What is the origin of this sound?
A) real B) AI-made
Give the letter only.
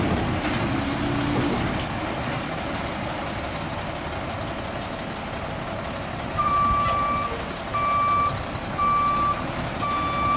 A